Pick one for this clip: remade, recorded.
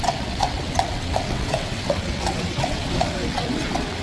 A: remade